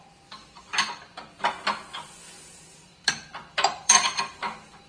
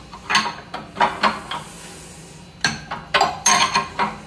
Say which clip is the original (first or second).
second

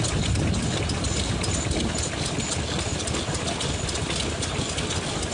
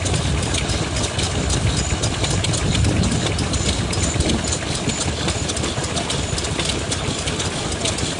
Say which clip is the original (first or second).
first